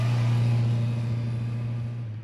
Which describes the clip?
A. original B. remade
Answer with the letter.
A